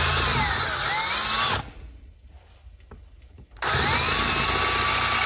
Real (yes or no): yes